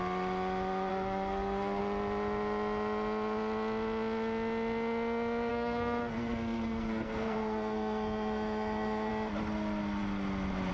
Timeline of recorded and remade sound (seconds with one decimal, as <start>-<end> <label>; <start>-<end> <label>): 0.0-0.9 recorded; 0.9-1.8 remade; 1.8-5.5 recorded; 5.5-9.1 remade; 9.1-10.7 recorded